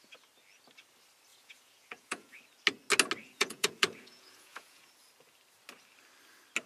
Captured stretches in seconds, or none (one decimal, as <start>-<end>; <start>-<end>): 0.0-1.3; 2.4-3.2; 4.9-6.7